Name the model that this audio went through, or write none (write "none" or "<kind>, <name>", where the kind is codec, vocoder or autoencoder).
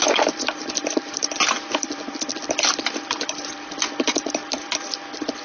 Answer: vocoder, BigVGAN v2